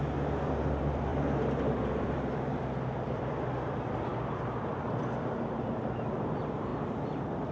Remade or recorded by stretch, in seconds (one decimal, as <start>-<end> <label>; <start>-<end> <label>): 0.0-4.1 remade; 4.1-4.7 recorded; 4.7-7.5 remade